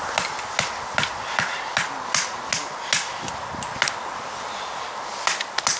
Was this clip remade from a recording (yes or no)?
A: no